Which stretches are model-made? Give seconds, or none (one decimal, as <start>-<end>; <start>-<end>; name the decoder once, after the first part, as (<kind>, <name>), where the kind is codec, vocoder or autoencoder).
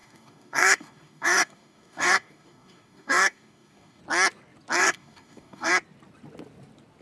0.0-4.0 (codec, DAC); 4.8-5.7